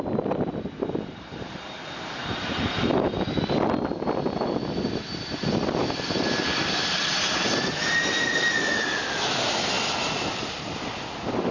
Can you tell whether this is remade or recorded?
recorded